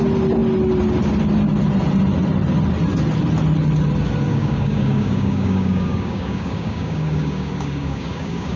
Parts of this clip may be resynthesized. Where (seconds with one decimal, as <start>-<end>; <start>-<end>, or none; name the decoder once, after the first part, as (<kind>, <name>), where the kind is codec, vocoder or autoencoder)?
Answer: 4.3-8.6 (codec, DAC)